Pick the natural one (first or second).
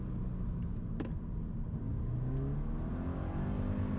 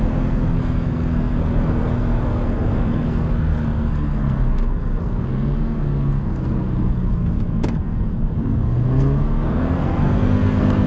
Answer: first